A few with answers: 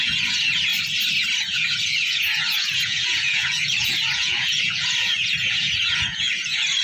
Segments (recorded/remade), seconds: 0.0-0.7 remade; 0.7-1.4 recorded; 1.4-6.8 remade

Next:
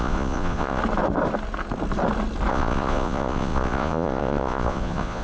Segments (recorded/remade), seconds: 0.0-0.8 remade; 0.8-2.5 recorded; 2.5-5.2 remade